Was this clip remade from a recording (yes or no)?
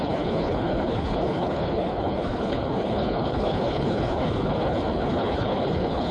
yes